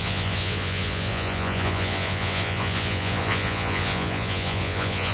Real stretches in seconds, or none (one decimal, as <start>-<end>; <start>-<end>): none